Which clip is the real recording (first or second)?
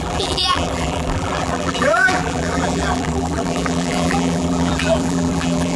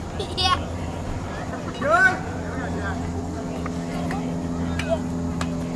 second